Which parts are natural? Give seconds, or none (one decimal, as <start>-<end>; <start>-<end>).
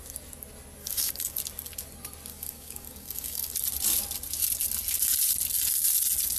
0.0-0.8; 1.4-2.3; 3.5-6.4